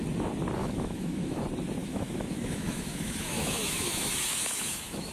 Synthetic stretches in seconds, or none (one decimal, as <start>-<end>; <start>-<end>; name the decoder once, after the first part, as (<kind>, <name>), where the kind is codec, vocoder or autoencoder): 0.6-1.4 (autoencoder, DAC-VAE); 1.8-5.1